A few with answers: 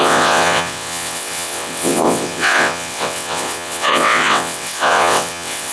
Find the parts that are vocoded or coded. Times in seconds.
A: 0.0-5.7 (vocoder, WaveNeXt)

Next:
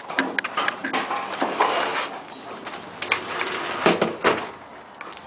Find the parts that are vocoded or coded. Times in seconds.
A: none

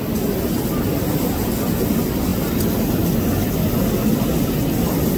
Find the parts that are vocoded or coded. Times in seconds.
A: none

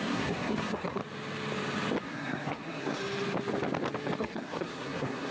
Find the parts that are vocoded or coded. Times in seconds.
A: 0.0-1.0 (codec, SNAC); 2.0-3.0; 4.2-5.3

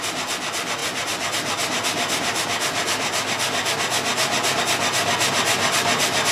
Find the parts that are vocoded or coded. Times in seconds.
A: none

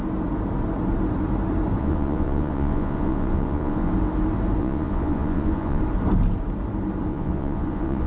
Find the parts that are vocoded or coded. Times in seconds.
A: 1.8-3.9 (vocoder, Vocos); 4.6-5.8; 7.1-8.1